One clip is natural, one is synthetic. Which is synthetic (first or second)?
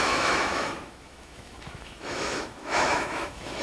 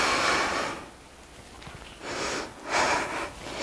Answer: first